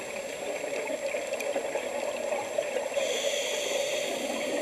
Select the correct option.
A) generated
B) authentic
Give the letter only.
B